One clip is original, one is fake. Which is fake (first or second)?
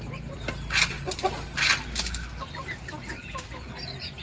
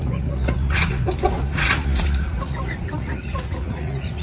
second